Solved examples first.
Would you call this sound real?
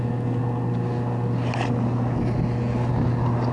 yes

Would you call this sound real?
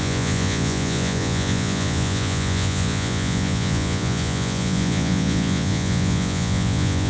no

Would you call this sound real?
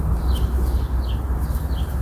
no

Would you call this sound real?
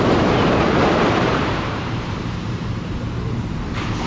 no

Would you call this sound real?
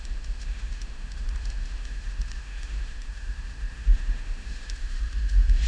no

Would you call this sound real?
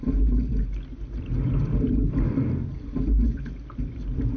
yes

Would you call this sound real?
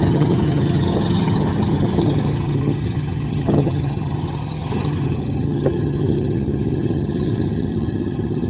no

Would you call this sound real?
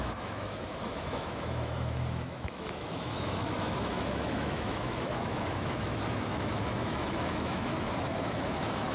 no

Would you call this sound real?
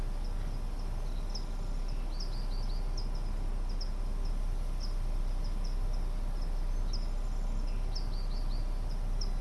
yes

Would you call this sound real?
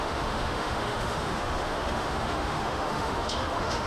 no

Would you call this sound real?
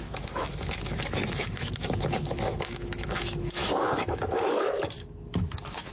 no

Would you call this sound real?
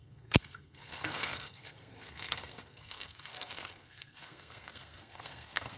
no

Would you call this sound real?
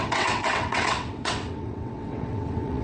no